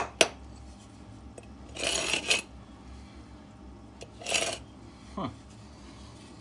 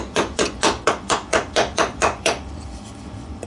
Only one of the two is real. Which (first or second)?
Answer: first